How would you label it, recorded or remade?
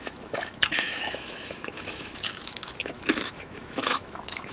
remade